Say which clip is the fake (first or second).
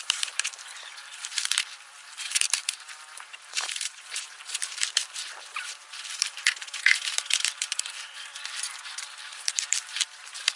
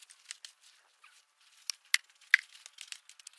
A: first